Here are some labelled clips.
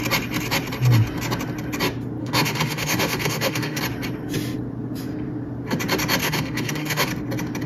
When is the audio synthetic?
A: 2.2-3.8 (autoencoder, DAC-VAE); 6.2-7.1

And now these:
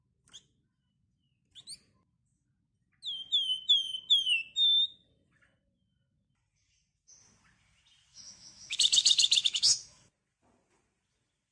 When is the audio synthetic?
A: 8.1-10.1 (autoencoder, DAC-VAE)

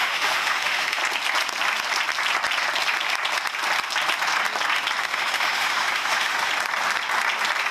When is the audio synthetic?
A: 0.0-1.0 (autoencoder, DAC-VAE); 5.0-6.5

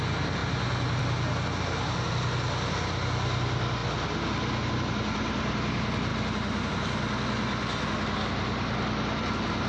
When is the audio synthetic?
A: none

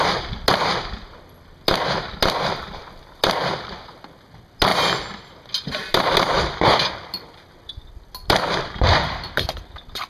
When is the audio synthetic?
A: none

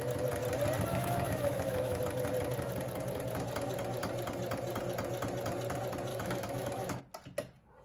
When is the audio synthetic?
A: 0.9-2.0 (autoencoder, DAC-VAE); 6.1-7.0